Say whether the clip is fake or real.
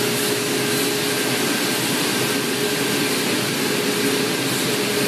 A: real